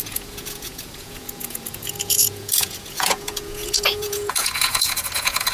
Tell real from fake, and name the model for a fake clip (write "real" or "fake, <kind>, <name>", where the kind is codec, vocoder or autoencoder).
fake, vocoder, Vocos